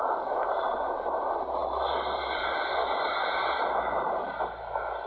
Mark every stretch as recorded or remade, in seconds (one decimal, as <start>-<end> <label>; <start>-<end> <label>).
0.0-5.1 recorded

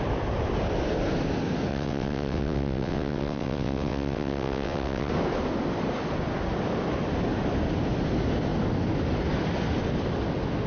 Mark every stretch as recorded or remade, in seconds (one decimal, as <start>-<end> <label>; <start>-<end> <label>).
0.0-1.7 recorded; 1.7-5.1 remade; 5.1-10.7 recorded

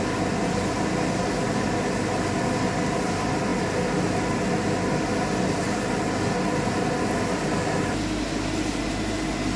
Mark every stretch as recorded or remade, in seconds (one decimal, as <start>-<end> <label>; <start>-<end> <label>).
0.0-9.6 recorded

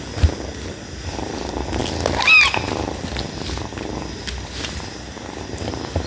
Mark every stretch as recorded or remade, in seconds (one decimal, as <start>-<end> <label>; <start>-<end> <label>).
0.0-6.1 recorded

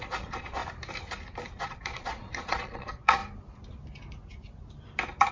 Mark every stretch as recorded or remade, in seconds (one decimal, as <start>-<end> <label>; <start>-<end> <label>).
0.0-0.6 remade; 0.6-1.6 recorded; 1.6-3.2 remade; 3.2-5.3 recorded